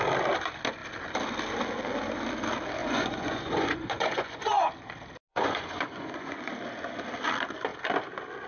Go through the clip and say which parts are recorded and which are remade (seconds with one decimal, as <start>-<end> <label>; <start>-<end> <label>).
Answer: 0.0-2.8 recorded; 2.8-4.6 remade; 4.6-5.3 recorded; 5.3-6.5 remade; 6.5-8.5 recorded